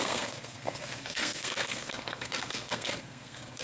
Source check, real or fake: fake